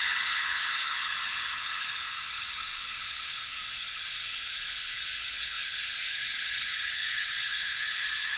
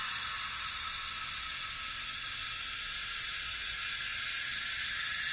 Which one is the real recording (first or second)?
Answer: second